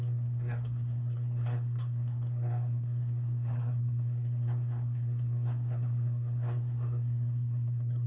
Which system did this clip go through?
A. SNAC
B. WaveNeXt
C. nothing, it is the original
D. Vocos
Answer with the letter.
A